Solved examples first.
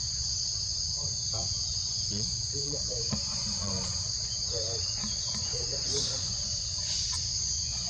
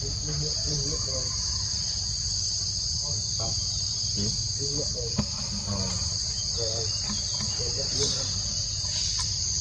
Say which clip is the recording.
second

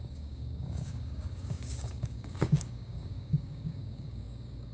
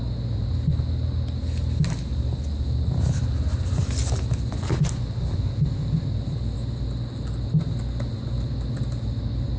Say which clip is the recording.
second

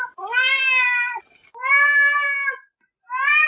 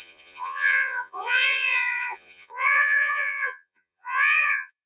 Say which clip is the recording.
first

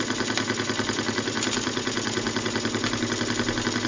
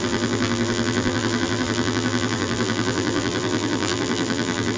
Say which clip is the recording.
first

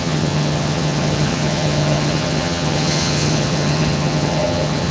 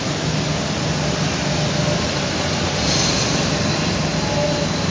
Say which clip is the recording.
second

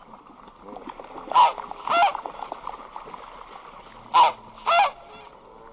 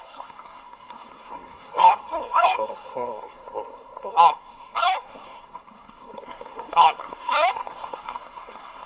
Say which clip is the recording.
first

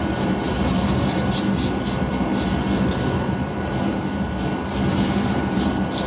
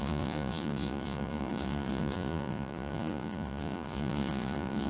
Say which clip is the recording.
first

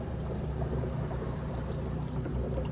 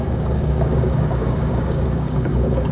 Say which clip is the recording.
first